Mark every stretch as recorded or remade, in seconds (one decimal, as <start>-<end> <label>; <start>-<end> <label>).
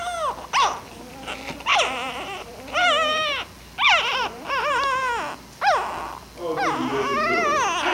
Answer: 0.0-1.7 recorded; 1.7-2.6 remade; 2.6-4.1 recorded; 4.1-4.8 remade; 4.8-7.9 recorded